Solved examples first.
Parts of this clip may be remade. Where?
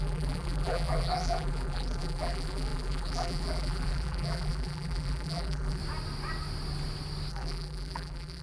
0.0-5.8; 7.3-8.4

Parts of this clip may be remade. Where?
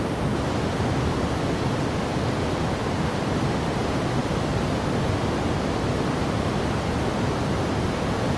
2.8-5.3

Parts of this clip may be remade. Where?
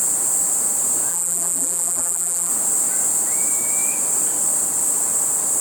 1.1-2.5